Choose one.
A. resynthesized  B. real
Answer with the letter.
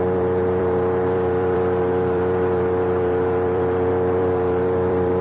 A